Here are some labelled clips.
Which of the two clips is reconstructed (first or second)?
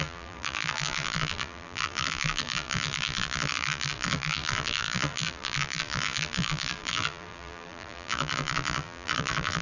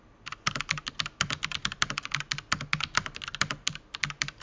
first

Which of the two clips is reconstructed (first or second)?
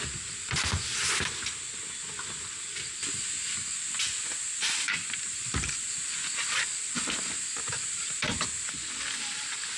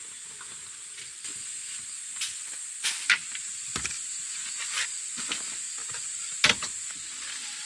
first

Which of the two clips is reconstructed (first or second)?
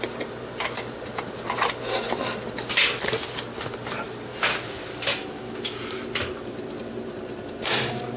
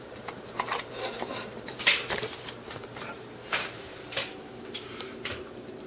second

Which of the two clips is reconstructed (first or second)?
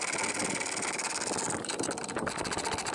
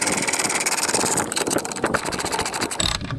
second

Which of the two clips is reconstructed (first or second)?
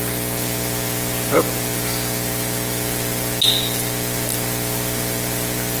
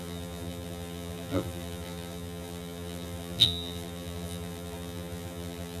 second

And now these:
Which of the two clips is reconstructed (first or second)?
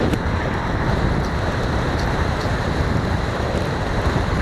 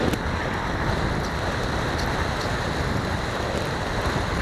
first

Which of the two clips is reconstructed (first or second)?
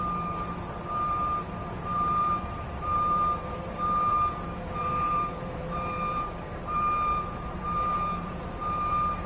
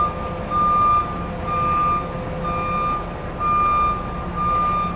first